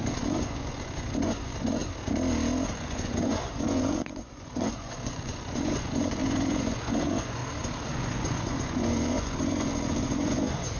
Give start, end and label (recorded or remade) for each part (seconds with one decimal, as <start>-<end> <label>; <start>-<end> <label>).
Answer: 0.0-1.8 remade; 1.8-2.7 recorded; 2.7-7.4 remade; 7.4-7.9 recorded; 7.9-10.8 remade